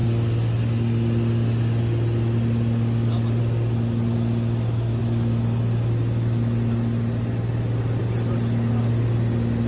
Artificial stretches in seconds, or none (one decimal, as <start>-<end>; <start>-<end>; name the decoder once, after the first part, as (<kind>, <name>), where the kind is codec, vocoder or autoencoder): none